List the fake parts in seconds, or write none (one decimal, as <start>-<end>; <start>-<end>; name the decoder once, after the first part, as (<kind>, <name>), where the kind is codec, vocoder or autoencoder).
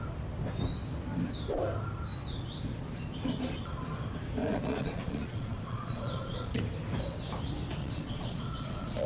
4.4-6.6 (vocoder, Vocos); 7.8-9.1